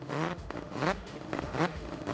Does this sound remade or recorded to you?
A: remade